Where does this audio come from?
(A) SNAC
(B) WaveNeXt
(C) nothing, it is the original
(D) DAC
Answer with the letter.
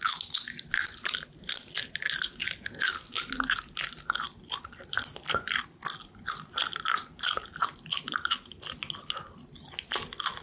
C